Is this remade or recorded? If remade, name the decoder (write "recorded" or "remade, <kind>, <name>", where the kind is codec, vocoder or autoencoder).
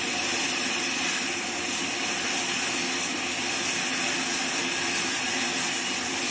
recorded